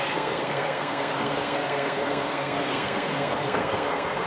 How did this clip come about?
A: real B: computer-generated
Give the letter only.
B